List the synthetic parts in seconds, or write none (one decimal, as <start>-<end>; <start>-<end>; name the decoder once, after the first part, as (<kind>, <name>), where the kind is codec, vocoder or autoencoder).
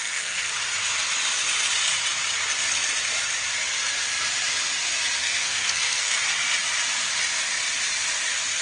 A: 0.0-0.5 (codec, SNAC); 5.2-6.2